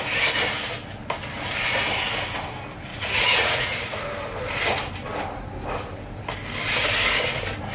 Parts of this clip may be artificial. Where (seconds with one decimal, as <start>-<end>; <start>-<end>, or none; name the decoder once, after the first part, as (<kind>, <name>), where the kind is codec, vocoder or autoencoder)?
2.9-4.0 (vocoder, Vocos)